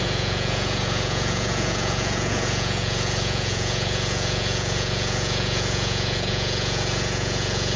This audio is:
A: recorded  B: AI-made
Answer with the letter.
B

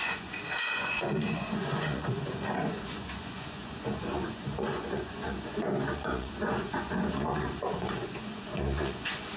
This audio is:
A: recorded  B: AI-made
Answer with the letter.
B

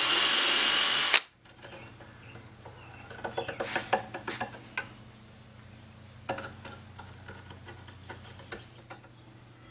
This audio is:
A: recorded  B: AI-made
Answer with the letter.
A